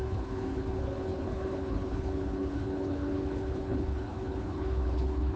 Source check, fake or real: fake